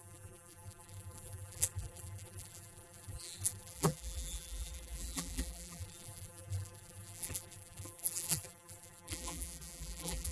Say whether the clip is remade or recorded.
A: remade